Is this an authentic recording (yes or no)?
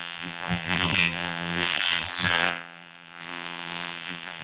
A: no